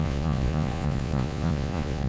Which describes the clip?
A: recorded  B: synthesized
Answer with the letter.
B